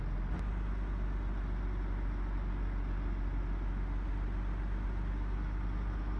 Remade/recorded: recorded